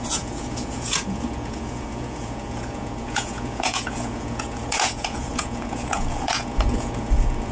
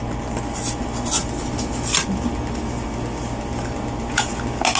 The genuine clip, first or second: second